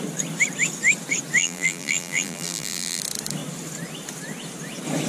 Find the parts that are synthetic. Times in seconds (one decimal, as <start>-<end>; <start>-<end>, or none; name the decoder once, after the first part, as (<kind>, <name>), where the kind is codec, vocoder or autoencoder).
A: 1.4-3.0 (vocoder, BigVGAN v2)